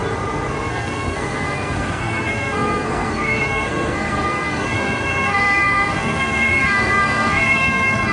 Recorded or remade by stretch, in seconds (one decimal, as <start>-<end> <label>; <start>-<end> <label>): 0.0-0.7 recorded; 0.7-8.1 remade